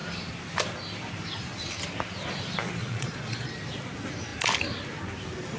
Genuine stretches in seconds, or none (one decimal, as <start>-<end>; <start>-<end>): 0.0-2.8; 3.5-5.6

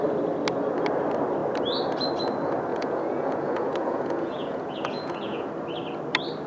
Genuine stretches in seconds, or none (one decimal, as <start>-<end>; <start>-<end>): 0.0-2.7; 5.5-6.5

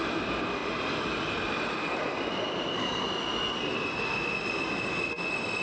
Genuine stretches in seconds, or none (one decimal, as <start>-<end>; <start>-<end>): 0.0-5.6